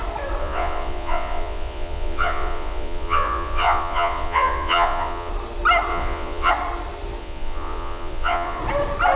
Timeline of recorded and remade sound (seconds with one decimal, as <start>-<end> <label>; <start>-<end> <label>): 0.0-0.4 recorded; 0.4-5.3 remade; 5.3-5.9 recorded; 5.9-6.5 remade; 6.5-7.2 recorded; 7.2-8.6 remade; 8.6-9.2 recorded